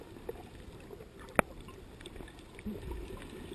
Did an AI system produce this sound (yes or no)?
no